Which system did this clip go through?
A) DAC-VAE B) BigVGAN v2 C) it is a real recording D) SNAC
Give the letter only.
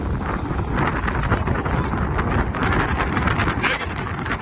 C